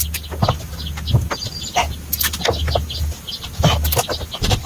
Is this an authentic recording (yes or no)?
yes